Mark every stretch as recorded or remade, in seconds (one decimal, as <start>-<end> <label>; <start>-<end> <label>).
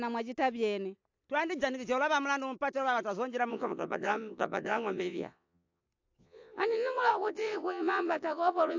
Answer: 0.0-3.5 recorded; 3.5-5.8 remade; 5.8-6.2 recorded; 6.2-8.8 remade